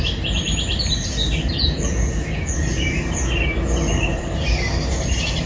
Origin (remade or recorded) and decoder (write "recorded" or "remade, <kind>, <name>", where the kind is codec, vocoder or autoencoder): recorded